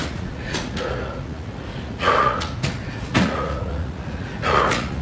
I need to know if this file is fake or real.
fake